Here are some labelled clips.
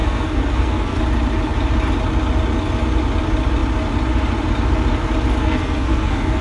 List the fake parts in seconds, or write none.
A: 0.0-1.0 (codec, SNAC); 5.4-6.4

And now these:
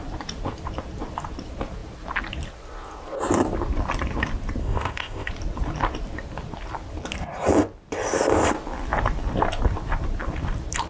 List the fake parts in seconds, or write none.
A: 4.6-5.3 (codec, ZipCodec)

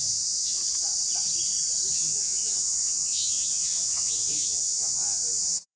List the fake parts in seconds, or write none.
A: 0.0-0.6 (vocoder, Vocos); 1.9-5.8

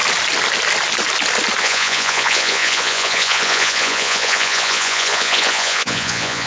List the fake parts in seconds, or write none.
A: 1.6-6.5 (vocoder, Vocos)